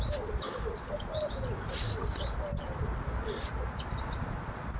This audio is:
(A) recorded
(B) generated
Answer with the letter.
A